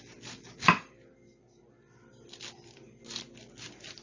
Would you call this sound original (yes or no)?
yes